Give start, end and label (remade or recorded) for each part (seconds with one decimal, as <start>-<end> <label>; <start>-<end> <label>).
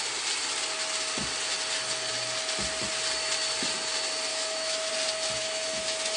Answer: 0.0-4.3 recorded; 4.3-4.9 remade; 4.9-5.4 recorded; 5.4-6.2 remade